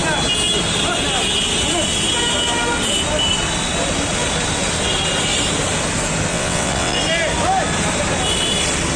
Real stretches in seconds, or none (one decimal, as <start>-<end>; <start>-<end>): 0.0-6.3; 7.0-9.0